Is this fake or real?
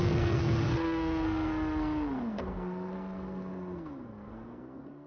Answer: fake